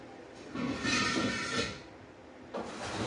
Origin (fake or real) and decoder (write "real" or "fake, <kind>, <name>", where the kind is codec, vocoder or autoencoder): real